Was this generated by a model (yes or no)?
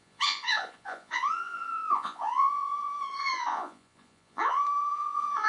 yes